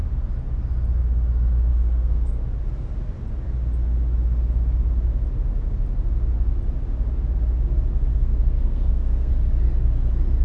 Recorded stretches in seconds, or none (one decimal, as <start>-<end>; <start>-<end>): 0.0-1.7; 2.4-8.1; 9.3-10.4